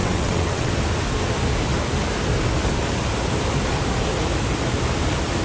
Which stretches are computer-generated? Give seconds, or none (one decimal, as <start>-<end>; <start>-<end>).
0.0-0.7